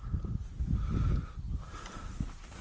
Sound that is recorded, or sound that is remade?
recorded